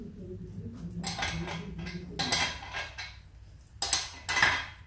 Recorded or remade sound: recorded